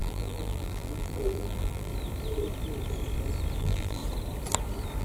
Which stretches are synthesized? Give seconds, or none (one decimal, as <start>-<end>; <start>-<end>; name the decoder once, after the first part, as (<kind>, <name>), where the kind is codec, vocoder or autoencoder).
0.0-1.9 (vocoder, BigVGAN v2); 3.6-4.0